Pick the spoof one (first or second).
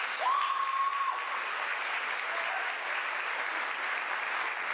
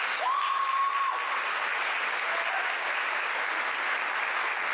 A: first